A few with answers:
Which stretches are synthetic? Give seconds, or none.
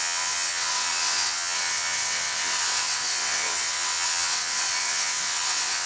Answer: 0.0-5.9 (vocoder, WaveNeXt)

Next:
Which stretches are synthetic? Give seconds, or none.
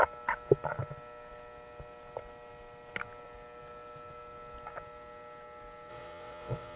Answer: 5.9-6.8 (vocoder, WaveNeXt)